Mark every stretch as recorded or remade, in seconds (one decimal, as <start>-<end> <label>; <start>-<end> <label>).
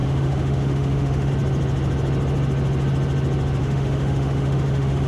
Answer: 0.0-1.3 remade; 1.3-3.6 recorded; 3.6-5.1 remade